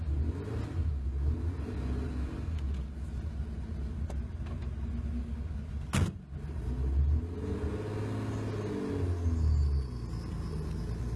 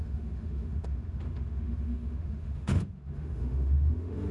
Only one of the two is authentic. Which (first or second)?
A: first